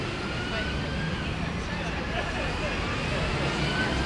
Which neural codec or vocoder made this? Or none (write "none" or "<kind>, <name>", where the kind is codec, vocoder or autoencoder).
none